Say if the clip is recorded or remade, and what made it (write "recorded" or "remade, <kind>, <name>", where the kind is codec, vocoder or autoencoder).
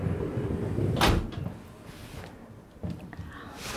recorded